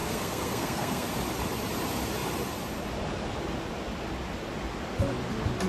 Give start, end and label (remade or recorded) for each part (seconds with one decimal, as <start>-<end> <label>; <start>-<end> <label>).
0.0-1.1 remade; 1.1-5.7 recorded